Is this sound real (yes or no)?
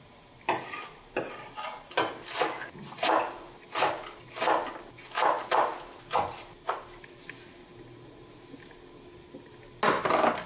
yes